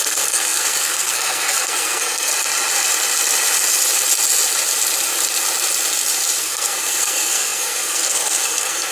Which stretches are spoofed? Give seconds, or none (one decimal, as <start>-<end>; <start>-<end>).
0.0-2.3; 6.4-8.9